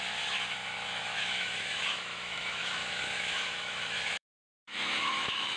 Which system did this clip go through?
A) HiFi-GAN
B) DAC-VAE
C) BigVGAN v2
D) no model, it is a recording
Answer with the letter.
B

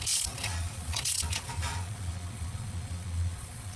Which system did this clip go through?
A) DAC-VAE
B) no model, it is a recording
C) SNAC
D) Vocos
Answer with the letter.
D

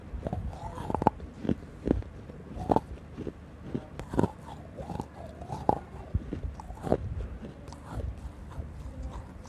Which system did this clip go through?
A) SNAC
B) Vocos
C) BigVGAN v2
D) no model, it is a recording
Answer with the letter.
D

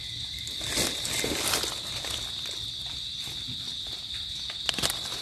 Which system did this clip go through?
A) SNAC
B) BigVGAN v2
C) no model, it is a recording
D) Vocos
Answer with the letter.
C